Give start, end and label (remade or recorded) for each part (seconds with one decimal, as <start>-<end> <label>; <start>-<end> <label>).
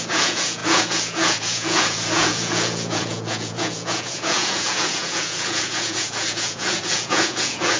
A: 0.0-7.8 remade